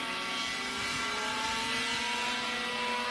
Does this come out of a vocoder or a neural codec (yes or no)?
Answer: no